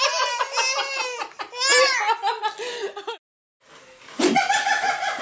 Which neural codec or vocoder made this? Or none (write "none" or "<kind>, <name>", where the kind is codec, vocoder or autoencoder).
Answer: none